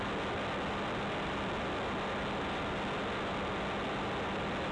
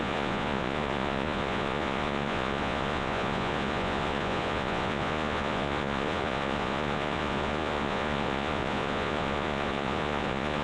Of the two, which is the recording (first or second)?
first